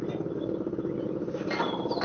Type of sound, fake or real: real